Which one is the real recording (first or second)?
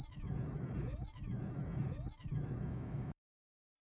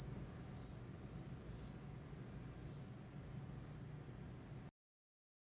second